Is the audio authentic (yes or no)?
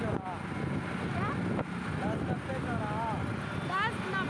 yes